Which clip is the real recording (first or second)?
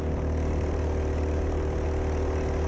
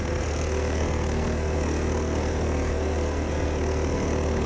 first